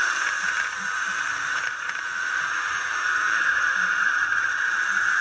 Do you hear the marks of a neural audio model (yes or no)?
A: yes